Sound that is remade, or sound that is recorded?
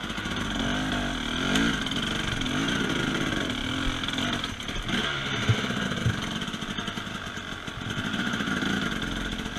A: recorded